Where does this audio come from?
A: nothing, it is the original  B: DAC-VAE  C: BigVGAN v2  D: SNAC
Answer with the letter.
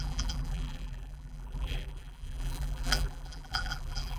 C